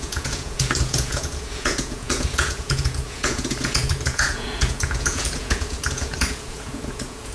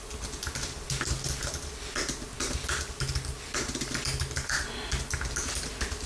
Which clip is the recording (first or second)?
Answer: second